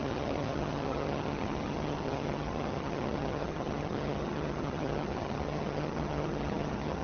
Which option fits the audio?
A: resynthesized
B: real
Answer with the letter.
A